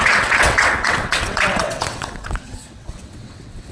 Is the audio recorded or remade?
remade